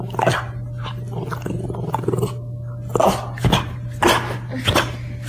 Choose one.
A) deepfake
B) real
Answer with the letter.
B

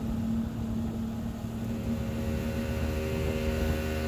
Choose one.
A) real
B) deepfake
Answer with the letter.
A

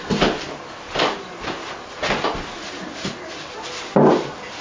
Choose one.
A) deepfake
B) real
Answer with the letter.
B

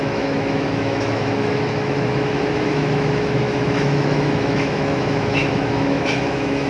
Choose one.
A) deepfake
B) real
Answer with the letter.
A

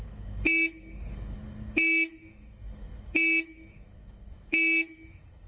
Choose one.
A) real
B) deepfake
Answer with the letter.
B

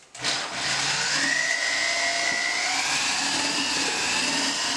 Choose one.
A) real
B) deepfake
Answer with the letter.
A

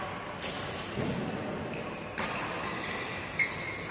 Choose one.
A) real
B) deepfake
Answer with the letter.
A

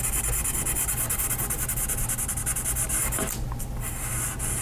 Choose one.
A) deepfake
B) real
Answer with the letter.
B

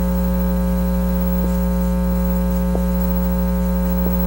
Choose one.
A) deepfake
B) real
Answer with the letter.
B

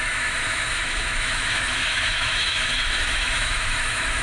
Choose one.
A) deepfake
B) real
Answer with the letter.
A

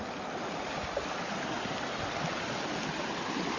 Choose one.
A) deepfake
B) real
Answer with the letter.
B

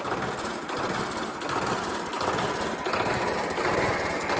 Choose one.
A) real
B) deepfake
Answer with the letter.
A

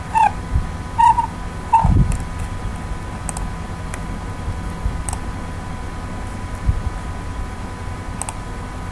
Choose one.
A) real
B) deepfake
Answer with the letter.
A